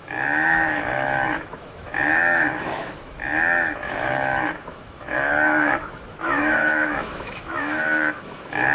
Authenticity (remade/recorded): remade